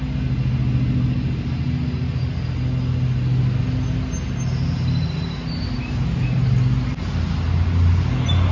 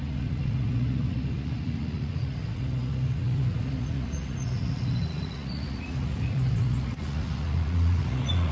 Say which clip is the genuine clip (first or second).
first